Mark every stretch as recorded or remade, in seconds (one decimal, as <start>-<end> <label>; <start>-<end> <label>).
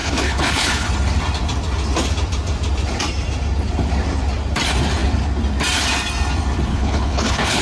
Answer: 0.0-0.9 remade; 0.9-6.7 recorded; 6.7-7.6 remade